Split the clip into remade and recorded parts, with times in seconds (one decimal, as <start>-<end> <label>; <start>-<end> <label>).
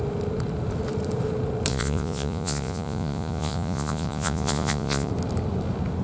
0.0-1.7 recorded; 1.7-5.1 remade; 5.1-6.0 recorded